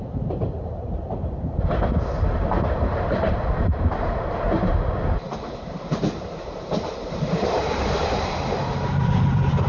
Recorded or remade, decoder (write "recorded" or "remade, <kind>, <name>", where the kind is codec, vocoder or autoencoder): remade, vocoder, BigVGAN v2